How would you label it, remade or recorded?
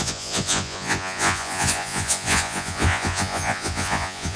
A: remade